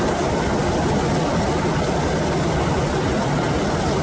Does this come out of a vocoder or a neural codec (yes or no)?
no